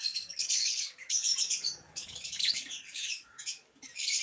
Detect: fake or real fake